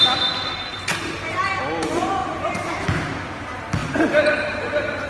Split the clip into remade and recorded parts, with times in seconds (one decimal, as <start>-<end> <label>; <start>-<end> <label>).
0.0-0.7 recorded; 0.7-1.4 remade; 1.4-2.2 recorded; 2.2-2.7 remade; 2.7-3.8 recorded; 3.8-5.1 remade